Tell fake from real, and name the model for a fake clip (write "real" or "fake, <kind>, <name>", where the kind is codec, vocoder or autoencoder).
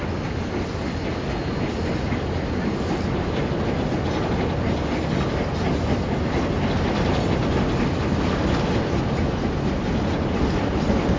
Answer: real